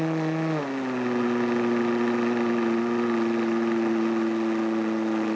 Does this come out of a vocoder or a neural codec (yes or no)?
no